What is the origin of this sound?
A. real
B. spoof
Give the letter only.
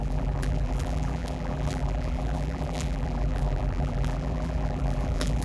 B